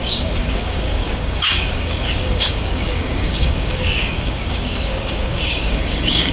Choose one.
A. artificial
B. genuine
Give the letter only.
A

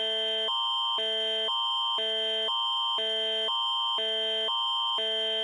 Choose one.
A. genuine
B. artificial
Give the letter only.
A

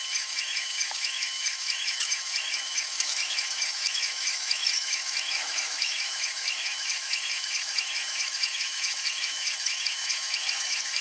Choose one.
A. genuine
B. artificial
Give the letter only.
B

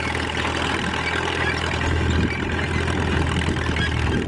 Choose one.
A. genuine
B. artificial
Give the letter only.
A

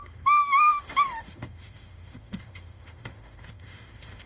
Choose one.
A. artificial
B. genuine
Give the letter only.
A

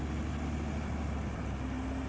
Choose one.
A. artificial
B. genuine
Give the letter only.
B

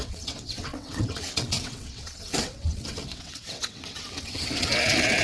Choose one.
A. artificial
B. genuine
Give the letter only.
A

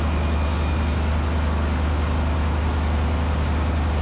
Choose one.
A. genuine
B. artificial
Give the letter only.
A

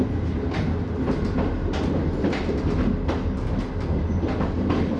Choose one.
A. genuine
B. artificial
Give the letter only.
A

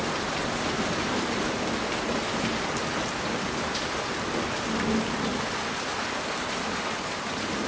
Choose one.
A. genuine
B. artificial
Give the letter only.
A